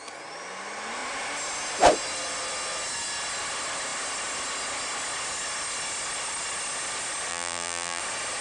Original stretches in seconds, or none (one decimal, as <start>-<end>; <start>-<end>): 0.0-7.3; 8.0-8.4